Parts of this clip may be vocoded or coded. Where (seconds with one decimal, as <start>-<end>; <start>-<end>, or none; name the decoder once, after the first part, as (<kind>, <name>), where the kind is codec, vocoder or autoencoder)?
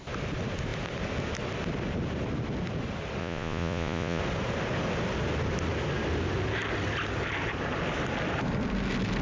3.2-4.2 (vocoder, Vocos)